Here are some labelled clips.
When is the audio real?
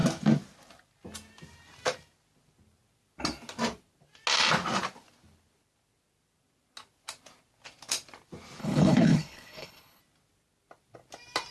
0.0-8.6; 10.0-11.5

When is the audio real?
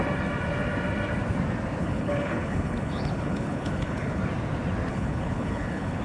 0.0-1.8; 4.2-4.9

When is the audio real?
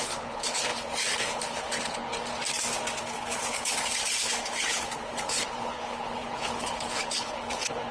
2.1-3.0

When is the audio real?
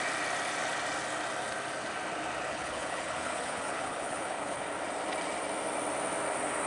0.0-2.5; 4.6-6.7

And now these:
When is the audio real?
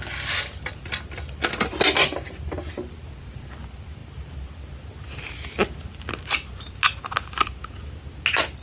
0.0-8.6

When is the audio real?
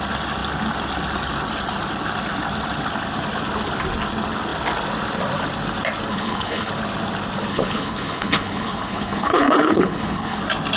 0.0-6.1; 6.7-7.5; 10.4-10.8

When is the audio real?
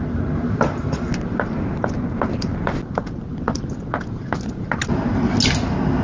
0.0-6.0